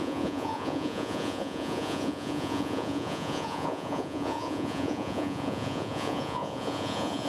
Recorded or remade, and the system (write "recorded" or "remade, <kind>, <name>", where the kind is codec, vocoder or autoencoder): remade, vocoder, Vocos